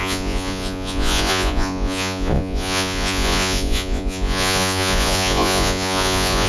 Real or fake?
fake